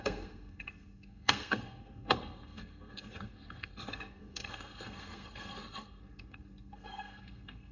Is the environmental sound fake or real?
fake